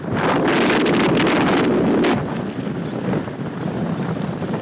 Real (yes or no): no